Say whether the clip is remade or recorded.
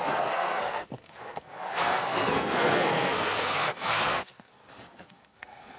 remade